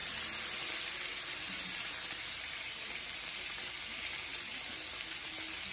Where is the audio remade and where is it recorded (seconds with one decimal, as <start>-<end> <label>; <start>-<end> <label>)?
0.0-5.7 recorded